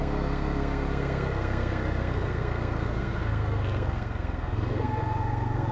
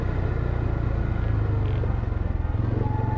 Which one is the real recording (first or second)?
second